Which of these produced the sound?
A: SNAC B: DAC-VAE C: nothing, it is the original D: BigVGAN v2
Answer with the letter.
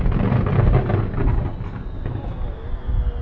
C